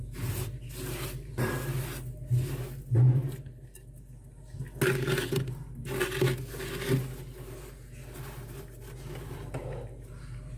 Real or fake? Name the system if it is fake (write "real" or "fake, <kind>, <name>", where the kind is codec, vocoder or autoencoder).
real